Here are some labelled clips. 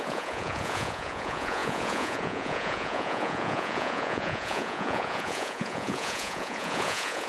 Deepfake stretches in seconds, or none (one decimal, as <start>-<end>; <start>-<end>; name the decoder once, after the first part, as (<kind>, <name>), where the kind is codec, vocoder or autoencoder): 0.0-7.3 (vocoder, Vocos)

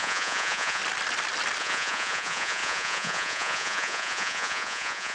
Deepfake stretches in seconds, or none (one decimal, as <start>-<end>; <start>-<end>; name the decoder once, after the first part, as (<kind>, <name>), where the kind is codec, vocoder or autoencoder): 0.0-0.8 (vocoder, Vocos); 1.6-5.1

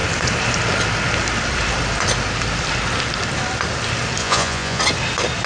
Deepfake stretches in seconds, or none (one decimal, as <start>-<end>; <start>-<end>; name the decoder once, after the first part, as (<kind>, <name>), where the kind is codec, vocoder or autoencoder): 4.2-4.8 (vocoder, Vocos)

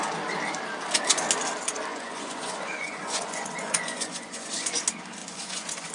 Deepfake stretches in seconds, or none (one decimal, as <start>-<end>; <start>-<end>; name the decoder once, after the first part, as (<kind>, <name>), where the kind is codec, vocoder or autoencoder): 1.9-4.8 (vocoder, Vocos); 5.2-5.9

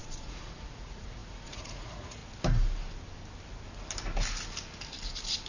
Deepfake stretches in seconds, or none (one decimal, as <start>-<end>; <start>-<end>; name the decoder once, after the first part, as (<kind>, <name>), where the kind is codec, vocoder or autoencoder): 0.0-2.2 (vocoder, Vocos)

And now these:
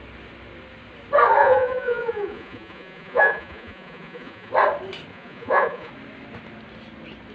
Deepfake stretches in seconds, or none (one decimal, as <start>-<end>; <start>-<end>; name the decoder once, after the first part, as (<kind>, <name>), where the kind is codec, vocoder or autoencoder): 1.4-4.5 (vocoder, Vocos); 5.1-5.9

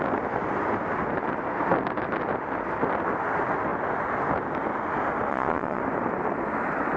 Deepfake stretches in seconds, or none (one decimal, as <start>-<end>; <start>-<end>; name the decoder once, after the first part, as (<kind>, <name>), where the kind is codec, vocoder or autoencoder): 5.3-5.8 (vocoder, Vocos)